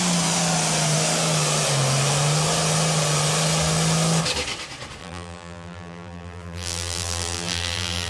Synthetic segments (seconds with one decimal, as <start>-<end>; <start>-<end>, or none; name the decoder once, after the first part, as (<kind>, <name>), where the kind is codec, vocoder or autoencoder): 5.0-8.1 (vocoder, BigVGAN v2)